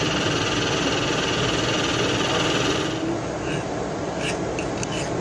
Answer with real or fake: real